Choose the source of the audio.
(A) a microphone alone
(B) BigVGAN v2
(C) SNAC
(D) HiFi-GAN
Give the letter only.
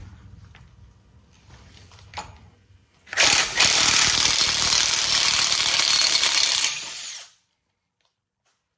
B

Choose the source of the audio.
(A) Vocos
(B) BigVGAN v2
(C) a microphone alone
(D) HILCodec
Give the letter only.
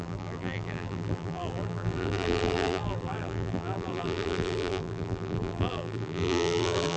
B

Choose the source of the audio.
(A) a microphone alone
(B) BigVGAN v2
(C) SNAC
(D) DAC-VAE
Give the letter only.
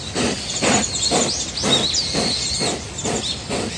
A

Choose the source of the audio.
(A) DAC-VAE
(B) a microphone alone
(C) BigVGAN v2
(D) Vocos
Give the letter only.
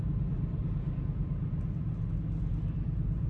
B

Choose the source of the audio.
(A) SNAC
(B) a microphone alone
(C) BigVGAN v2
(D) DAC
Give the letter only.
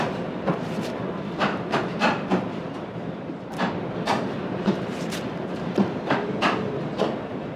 C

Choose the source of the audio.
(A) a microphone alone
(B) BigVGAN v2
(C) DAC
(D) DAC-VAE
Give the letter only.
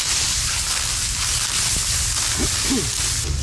A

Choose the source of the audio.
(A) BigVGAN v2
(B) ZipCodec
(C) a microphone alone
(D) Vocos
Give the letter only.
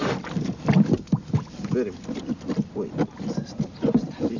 C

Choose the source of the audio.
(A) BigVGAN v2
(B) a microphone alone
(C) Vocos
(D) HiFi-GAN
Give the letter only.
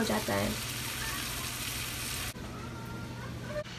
B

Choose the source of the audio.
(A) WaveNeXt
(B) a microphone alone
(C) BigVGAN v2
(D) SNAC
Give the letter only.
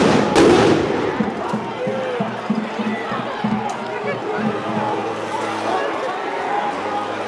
B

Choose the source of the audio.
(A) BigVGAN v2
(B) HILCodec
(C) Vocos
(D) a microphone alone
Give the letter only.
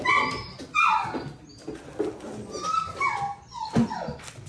D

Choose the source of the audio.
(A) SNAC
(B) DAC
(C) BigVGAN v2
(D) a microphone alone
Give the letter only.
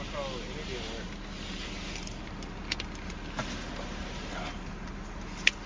D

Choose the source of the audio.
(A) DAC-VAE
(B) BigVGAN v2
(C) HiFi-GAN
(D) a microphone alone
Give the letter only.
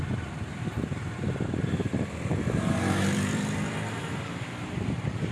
B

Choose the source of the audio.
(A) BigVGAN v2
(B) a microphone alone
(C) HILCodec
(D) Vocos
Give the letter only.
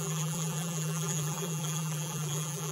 A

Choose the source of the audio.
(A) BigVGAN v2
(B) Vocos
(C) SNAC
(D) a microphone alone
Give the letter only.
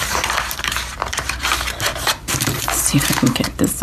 A